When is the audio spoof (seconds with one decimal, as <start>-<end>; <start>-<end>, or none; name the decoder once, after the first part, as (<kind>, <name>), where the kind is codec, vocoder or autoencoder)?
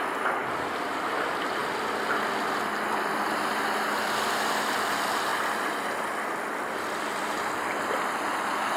none